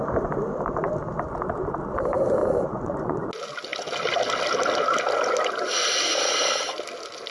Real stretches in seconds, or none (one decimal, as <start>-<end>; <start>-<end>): 0.0-2.4; 3.3-7.3

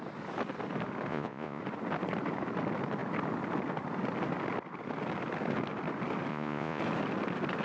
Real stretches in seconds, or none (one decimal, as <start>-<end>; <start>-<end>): 0.0-1.1; 1.6-6.3; 6.8-7.6

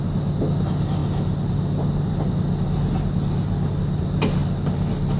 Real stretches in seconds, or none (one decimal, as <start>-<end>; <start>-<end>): 0.0-5.2